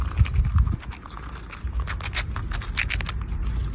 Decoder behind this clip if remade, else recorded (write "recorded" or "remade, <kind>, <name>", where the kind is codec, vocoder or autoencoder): recorded